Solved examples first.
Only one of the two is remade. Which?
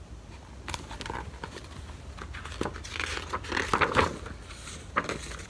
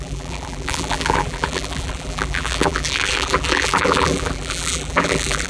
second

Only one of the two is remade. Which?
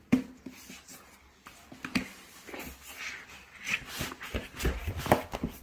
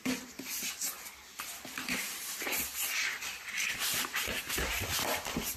second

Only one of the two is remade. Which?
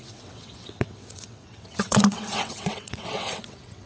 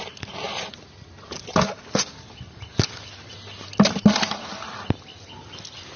first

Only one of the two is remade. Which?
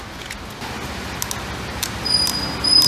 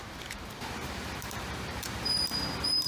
second